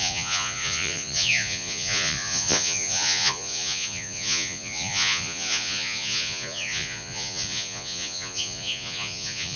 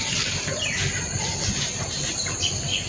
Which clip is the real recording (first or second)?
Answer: second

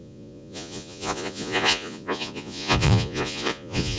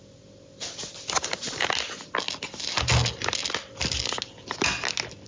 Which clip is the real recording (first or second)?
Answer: second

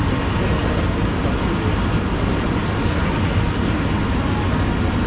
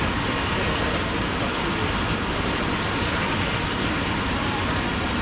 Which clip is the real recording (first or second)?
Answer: first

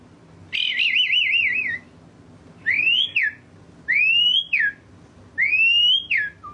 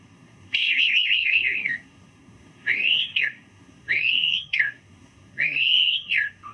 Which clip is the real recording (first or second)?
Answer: first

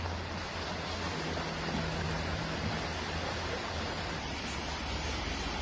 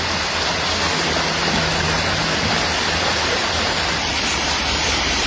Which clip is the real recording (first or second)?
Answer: first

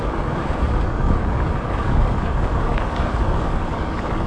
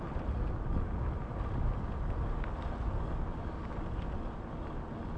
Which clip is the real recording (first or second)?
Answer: second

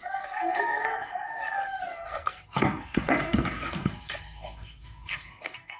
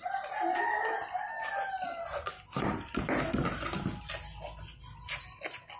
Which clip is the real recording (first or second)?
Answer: second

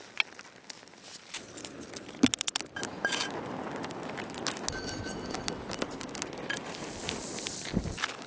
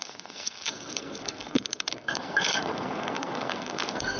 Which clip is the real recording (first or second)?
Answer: first